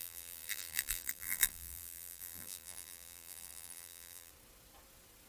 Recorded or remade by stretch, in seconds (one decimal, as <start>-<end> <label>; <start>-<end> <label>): 0.0-4.3 remade; 4.3-5.3 recorded